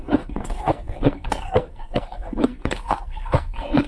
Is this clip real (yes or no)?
no